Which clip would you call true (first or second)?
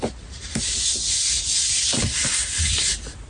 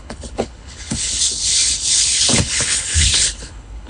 first